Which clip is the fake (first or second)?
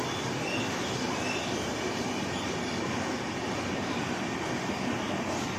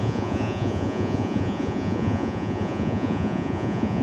second